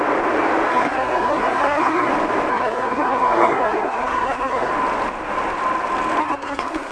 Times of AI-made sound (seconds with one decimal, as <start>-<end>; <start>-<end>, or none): 0.7-2.1; 2.5-4.7; 6.2-6.9